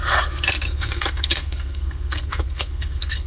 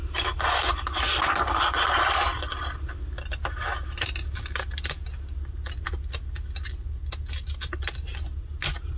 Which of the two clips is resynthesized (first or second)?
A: first